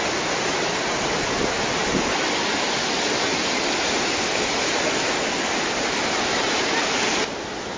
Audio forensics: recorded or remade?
recorded